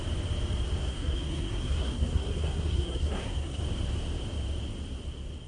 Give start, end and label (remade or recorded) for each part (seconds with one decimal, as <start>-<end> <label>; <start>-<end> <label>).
0.0-0.8 recorded; 0.8-3.6 remade; 3.6-5.5 recorded